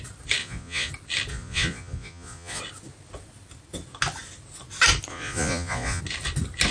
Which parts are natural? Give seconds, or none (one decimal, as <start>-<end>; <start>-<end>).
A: 0.0-0.4; 0.9-1.3; 2.6-5.1; 6.0-6.7